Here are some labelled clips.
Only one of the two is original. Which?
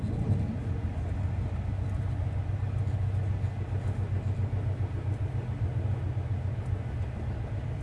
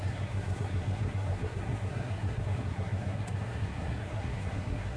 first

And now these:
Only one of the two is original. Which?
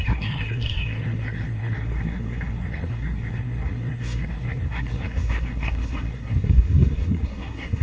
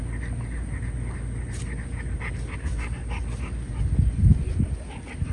second